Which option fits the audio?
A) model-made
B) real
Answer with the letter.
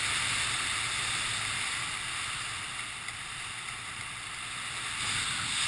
B